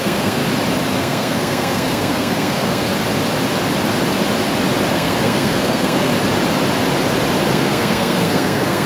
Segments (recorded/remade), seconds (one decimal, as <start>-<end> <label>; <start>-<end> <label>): 0.0-0.4 remade; 0.4-0.9 recorded; 0.9-2.9 remade; 2.9-4.9 recorded; 4.9-6.1 remade; 6.1-7.5 recorded; 7.5-8.9 remade